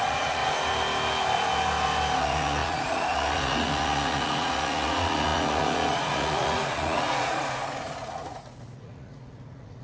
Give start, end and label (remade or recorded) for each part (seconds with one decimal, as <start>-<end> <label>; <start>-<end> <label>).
0.0-0.4 remade; 0.4-2.2 recorded; 2.2-9.8 remade